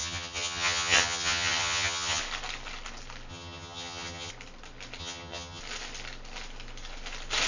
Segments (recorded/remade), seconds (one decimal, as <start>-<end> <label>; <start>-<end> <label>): 0.0-2.2 remade; 2.2-3.3 recorded; 3.3-4.3 remade; 4.3-5.0 recorded; 5.0-5.6 remade; 5.6-7.5 recorded